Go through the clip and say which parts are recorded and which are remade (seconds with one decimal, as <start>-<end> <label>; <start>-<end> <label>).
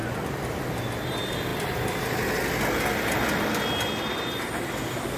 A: 0.0-0.8 remade; 0.8-5.2 recorded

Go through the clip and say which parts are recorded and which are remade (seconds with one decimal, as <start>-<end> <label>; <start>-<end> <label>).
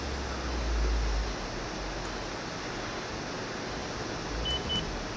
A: 0.0-5.2 recorded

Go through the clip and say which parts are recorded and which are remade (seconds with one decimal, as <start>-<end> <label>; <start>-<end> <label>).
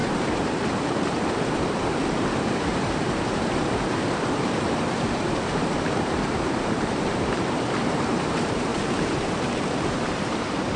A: 0.0-10.8 remade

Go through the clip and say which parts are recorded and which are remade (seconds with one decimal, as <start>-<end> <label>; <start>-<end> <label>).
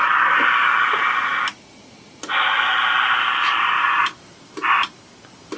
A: 0.0-5.6 recorded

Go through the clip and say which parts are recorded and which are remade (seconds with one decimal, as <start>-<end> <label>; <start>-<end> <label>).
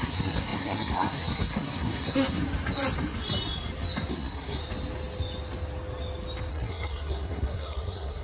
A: 0.0-2.4 remade; 2.4-4.1 recorded; 4.1-4.6 remade; 4.6-6.5 recorded; 6.5-8.2 remade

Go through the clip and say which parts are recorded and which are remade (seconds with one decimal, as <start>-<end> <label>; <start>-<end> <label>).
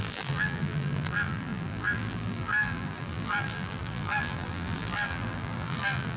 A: 0.0-6.2 remade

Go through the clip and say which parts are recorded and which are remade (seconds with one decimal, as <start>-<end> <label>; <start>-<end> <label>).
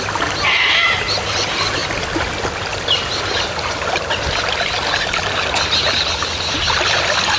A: 0.0-7.4 recorded